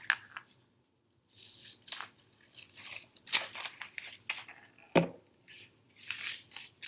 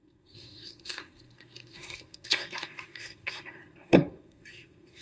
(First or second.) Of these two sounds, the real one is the first